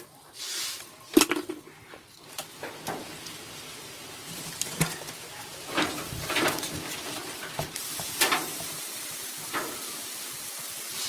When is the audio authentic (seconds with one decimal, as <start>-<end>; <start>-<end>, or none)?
0.5-2.9